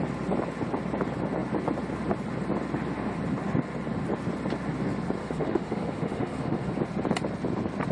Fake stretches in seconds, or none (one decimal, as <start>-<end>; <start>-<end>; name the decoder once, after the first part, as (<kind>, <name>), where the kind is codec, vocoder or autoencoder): 5.2-6.7 (autoencoder, DAC-VAE)